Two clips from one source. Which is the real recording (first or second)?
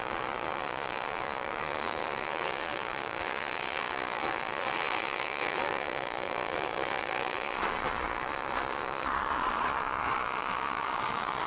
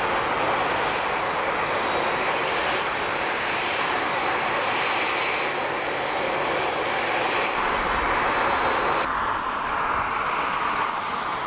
second